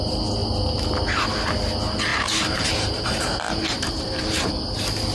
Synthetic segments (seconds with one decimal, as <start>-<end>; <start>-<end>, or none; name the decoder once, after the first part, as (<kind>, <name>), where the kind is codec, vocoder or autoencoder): 2.1-4.5 (vocoder, BigVGAN v2)